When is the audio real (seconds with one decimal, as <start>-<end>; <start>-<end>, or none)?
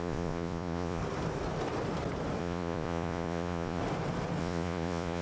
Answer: 1.0-2.4; 3.8-4.4